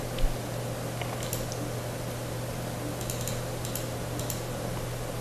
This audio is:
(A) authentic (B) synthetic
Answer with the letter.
A